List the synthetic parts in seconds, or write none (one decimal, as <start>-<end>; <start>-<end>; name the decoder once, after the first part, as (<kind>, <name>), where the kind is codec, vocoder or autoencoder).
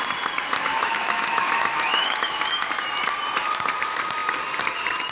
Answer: 0.7-2.7 (autoencoder, DAC-VAE)